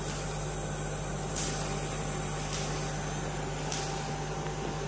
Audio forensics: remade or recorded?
recorded